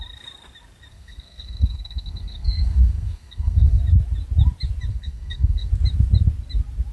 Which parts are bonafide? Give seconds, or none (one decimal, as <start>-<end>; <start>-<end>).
0.0-0.9; 3.8-4.9; 5.7-6.9